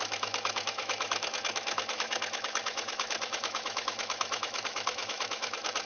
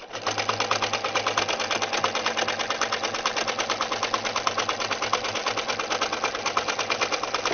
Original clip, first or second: second